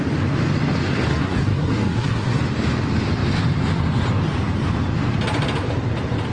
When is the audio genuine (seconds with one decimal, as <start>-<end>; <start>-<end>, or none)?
0.0-1.1; 2.4-6.3